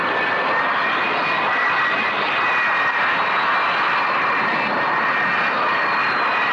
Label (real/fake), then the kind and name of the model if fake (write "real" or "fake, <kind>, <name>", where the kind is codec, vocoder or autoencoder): real